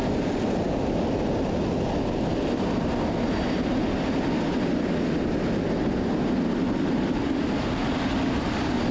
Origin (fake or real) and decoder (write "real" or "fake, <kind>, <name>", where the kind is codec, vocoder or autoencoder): real